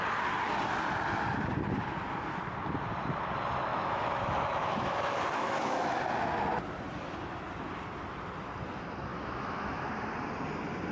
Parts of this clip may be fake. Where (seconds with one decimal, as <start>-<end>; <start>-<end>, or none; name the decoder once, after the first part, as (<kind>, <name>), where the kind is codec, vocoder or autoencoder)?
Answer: 3.7-6.0 (autoencoder, DAC-VAE); 9.1-9.9

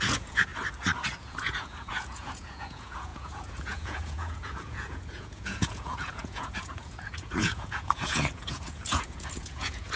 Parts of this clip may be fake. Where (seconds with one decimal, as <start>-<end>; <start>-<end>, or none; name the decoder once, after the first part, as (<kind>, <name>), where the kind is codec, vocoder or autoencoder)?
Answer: 0.0-0.5 (vocoder, Vocos); 1.2-10.0

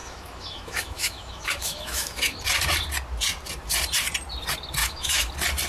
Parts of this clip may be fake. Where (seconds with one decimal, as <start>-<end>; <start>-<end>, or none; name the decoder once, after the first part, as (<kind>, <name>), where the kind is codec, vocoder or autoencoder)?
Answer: 0.0-2.4 (autoencoder, DAC-VAE); 4.8-5.3

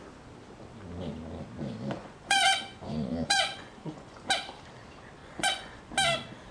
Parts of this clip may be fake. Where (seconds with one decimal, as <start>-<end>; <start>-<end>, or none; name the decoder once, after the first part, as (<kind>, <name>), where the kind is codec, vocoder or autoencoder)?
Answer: 2.0-4.3 (vocoder, Vocos); 5.2-5.9

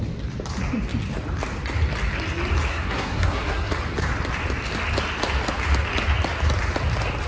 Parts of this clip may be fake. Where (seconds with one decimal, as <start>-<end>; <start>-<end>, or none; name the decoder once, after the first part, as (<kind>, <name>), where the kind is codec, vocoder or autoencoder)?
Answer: 2.7-3.7 (codec, SNAC)

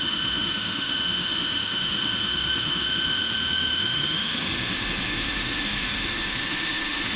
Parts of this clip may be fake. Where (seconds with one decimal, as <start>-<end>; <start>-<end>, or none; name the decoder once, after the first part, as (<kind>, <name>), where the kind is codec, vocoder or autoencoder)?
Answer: 0.0-7.2 (autoencoder, DAC-VAE)

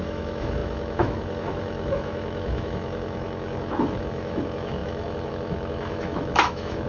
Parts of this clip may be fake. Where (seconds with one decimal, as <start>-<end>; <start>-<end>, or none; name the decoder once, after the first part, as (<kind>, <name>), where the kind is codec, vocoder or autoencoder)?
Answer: 0.0-6.9 (autoencoder, DAC-VAE)